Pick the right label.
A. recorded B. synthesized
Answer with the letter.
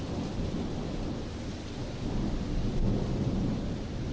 A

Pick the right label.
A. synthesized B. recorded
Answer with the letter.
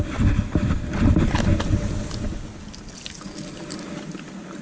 B